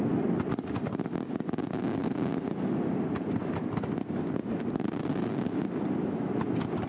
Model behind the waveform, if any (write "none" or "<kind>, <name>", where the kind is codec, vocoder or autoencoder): none